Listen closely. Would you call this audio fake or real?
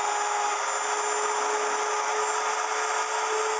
real